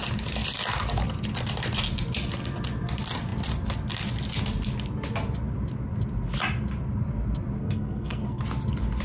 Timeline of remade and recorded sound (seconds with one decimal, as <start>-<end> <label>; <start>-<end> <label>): 0.0-7.6 recorded; 7.6-8.4 remade; 8.4-9.0 recorded